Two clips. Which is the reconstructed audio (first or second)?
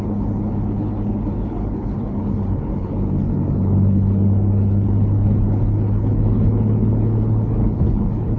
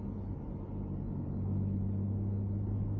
first